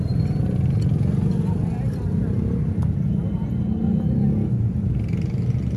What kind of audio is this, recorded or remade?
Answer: recorded